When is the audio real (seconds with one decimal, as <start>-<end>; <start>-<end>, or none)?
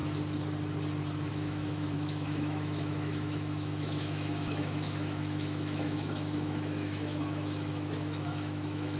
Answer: 0.0-1.3